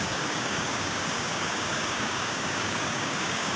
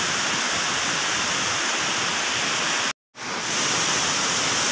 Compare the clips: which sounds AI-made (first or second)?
first